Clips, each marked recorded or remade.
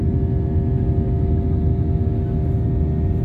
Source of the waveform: recorded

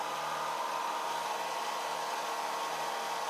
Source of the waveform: recorded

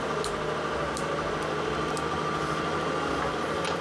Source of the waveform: recorded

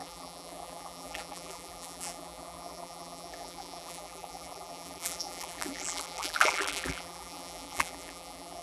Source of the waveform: remade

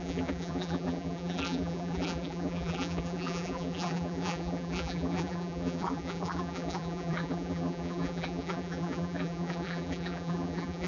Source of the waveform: remade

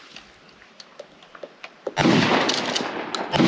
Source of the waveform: recorded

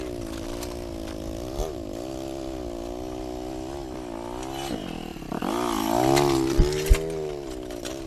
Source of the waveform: recorded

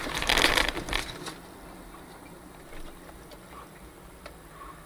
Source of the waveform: recorded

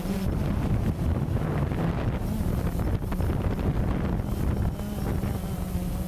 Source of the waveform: recorded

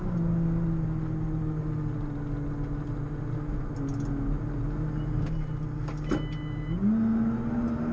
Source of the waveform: recorded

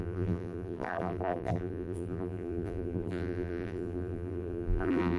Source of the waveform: remade